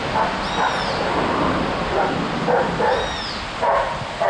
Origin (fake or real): real